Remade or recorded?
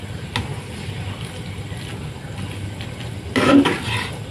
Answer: recorded